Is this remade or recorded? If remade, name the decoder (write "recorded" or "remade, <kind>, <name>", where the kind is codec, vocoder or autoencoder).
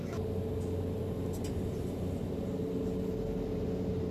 recorded